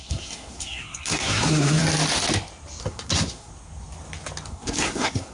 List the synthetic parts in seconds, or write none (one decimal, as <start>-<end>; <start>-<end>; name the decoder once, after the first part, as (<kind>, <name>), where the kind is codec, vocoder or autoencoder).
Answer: 0.0-1.8 (codec, SNAC); 2.8-3.5; 4.5-5.3